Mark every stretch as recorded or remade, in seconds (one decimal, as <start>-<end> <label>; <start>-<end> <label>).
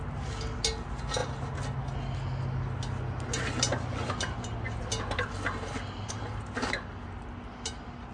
0.0-8.1 recorded